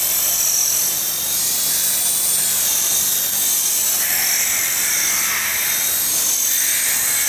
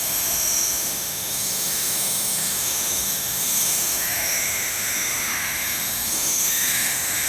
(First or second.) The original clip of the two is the first